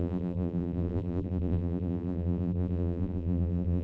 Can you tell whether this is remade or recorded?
remade